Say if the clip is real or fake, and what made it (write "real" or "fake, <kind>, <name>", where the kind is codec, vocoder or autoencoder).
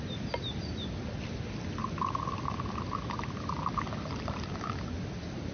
real